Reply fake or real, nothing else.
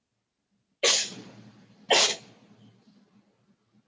real